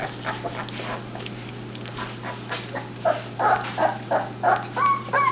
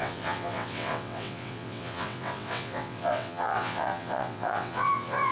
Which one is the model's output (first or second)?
second